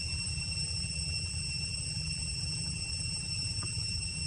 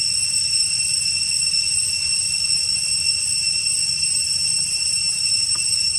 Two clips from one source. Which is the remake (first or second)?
first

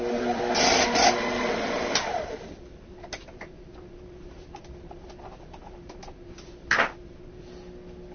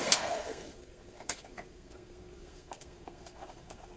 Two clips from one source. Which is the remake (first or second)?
second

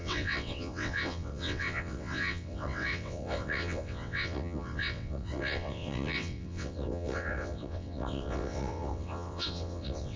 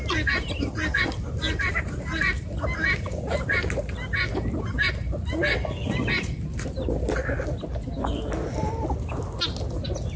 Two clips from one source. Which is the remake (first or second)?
first